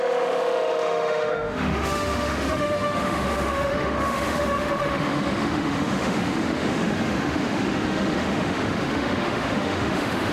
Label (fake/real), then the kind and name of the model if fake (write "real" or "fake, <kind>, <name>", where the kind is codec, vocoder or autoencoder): fake, autoencoder, DAC-VAE